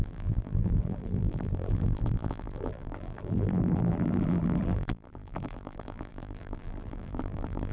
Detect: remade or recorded remade